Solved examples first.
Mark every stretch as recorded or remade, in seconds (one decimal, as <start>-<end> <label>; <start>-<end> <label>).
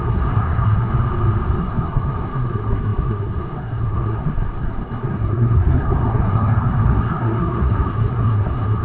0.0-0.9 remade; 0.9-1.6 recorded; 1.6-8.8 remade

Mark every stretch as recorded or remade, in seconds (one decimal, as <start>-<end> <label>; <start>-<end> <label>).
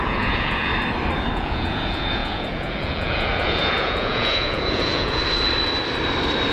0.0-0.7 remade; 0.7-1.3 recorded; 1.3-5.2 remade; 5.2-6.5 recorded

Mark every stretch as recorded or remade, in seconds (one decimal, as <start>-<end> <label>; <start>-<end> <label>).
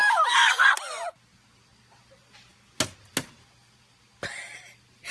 0.0-5.1 recorded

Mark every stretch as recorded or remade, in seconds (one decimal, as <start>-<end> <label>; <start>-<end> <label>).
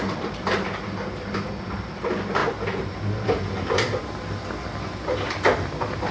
0.0-2.4 remade; 2.4-6.1 recorded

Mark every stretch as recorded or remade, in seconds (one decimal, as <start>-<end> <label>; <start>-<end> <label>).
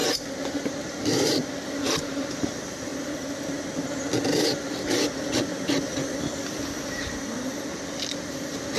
0.0-2.9 remade; 2.9-5.8 recorded; 5.8-8.8 remade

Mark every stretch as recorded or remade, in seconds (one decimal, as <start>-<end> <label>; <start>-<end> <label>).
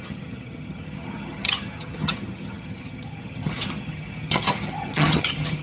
0.0-5.6 remade